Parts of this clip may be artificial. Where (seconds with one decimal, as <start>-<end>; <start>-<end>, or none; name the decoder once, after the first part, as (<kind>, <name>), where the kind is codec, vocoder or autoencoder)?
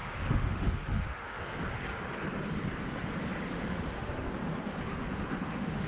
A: 0.0-1.4 (autoencoder, DAC-VAE); 3.5-4.3; 4.7-5.9